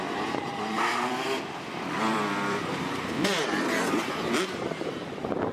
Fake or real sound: fake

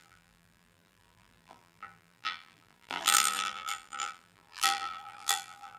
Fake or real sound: fake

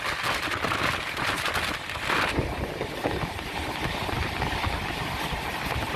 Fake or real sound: real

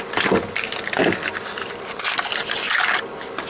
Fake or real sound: fake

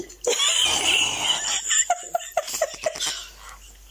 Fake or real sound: real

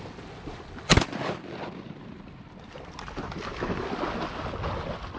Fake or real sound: real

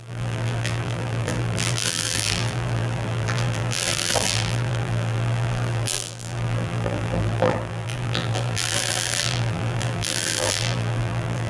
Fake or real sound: fake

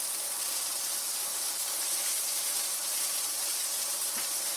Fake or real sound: fake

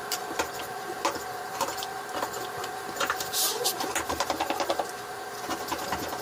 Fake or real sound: fake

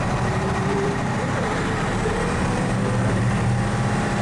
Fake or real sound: fake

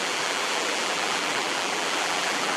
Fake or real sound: fake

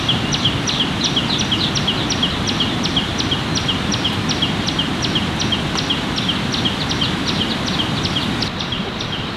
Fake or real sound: real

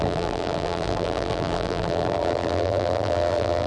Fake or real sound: fake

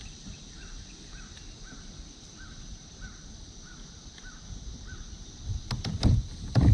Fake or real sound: fake